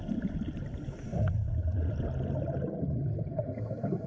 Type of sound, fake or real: real